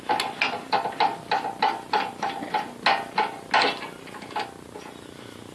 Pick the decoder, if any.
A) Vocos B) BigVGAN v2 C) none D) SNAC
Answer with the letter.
C